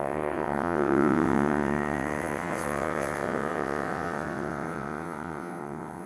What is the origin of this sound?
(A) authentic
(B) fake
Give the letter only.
B